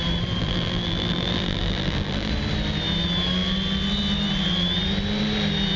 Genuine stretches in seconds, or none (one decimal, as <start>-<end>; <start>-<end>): 0.0-0.4; 2.3-5.8